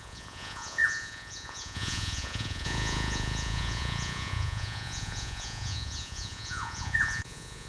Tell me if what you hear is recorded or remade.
remade